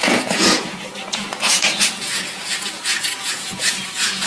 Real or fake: fake